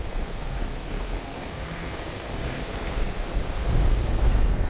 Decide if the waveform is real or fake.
fake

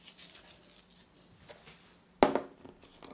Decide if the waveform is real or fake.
real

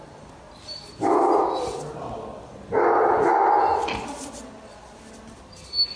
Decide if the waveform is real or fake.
real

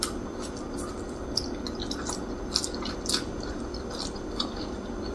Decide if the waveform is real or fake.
fake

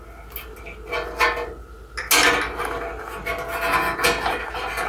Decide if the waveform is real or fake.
real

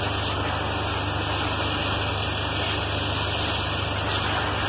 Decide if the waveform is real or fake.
real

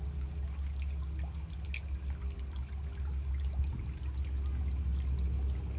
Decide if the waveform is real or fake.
real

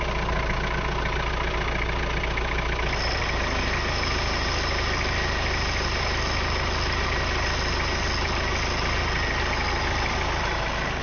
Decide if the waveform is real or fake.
real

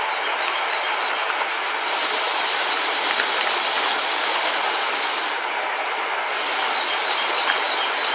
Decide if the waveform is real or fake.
real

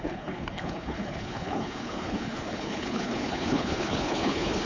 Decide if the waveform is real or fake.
fake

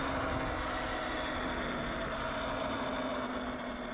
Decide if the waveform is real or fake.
real